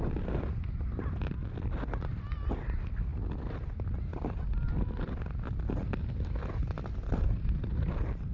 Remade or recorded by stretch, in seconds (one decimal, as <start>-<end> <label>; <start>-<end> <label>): 0.0-8.3 recorded